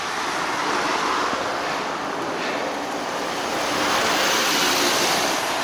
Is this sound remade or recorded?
recorded